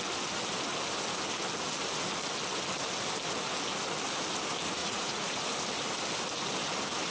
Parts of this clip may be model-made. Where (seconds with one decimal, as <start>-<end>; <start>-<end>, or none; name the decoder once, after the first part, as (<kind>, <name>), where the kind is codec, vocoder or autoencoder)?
4.8-5.5 (vocoder, Vocos)